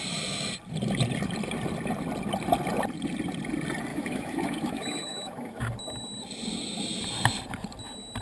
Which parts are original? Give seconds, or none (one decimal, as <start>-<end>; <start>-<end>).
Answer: 0.0-3.9; 5.7-8.2